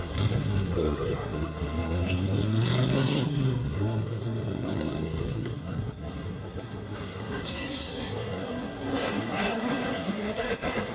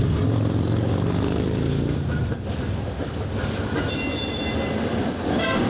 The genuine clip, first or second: second